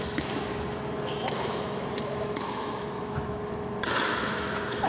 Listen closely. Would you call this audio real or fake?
fake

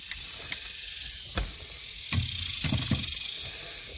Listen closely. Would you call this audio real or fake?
real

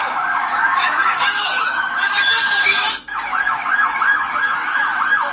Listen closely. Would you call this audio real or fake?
fake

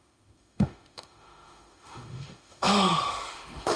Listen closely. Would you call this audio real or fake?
fake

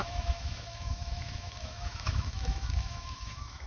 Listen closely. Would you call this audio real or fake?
fake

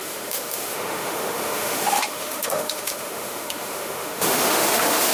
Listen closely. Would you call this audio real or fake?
fake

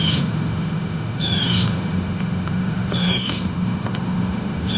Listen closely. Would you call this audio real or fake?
fake